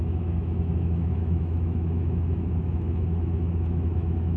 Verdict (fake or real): fake